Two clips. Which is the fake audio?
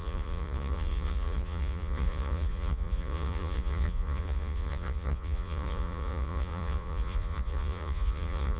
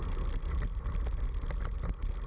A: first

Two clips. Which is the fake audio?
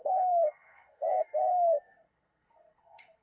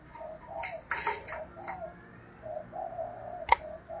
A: first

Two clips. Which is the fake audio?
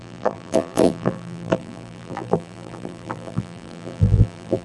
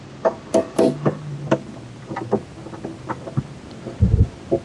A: first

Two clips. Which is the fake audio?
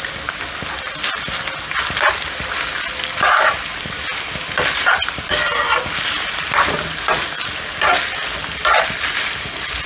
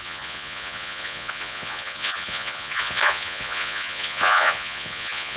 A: second